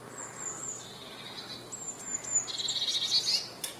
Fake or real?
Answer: real